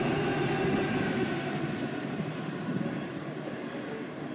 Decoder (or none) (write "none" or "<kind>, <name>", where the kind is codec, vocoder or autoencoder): none